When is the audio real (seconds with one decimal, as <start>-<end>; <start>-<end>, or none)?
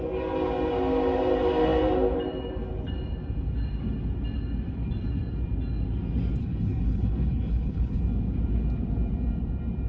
0.0-6.4; 8.0-9.9